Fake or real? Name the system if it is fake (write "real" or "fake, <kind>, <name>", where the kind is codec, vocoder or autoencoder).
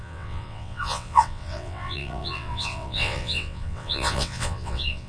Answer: fake, vocoder, WaveNeXt